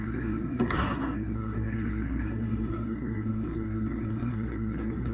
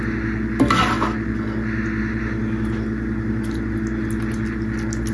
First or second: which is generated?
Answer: first